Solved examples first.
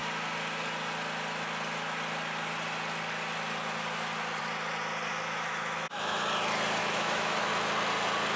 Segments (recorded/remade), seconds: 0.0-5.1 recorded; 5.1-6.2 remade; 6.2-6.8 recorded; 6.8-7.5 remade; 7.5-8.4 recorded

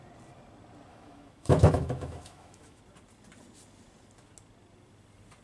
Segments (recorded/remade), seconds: 0.0-0.9 recorded; 0.9-2.8 remade; 2.8-5.4 recorded

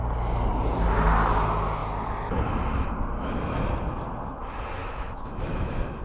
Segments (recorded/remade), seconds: 0.0-4.8 recorded; 4.8-6.0 remade

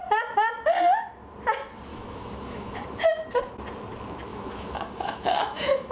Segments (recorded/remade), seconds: 0.0-1.9 recorded; 1.9-2.8 remade; 2.8-4.3 recorded; 4.3-5.9 remade